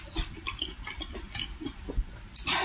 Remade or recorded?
recorded